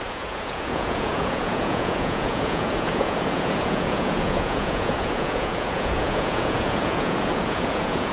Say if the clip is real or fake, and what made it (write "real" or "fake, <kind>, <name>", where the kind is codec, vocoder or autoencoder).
fake, vocoder, Vocos